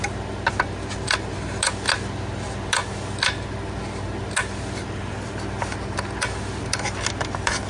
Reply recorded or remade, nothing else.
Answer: recorded